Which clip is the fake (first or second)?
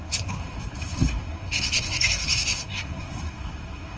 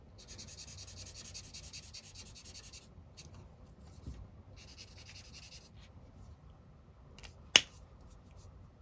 first